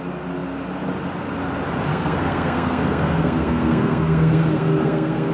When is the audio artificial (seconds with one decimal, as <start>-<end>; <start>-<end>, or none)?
1.9-5.3